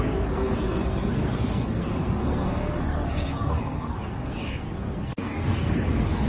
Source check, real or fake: fake